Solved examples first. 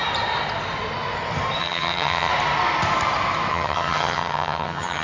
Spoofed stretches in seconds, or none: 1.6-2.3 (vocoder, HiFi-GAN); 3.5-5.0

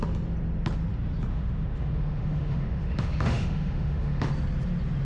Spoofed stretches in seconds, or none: 1.3-4.3 (autoencoder, DAC-VAE)

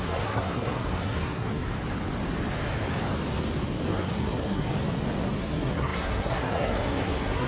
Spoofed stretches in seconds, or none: 0.0-1.7 (codec, SNAC); 3.9-4.7; 5.4-7.5

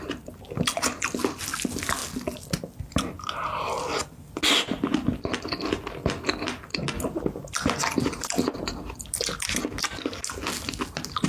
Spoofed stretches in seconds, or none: none

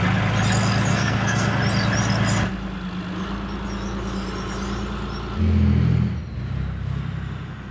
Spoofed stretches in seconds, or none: 0.9-1.6 (codec, SNAC)

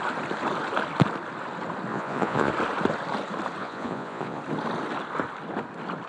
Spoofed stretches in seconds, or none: 1.9-2.5 (vocoder, Vocos); 3.6-4.4

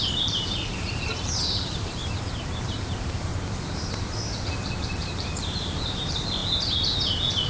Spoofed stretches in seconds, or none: 0.0-3.3 (vocoder, BigVGAN v2); 4.4-6.4